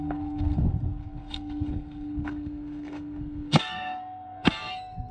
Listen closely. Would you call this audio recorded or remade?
remade